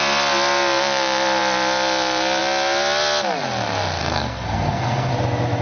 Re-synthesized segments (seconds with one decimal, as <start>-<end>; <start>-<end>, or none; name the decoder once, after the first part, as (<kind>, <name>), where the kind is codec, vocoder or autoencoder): 4.0-5.1 (codec, SNAC)